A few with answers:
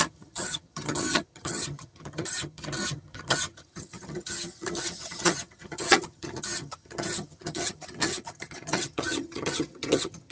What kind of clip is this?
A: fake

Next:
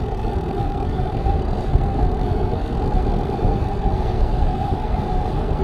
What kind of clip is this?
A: fake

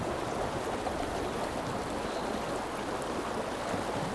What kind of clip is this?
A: real